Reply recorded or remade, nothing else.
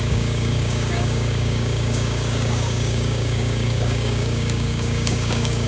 remade